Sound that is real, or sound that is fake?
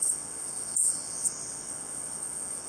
fake